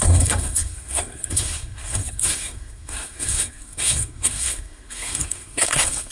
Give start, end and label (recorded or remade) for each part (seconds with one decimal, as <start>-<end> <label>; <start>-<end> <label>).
0.0-6.1 remade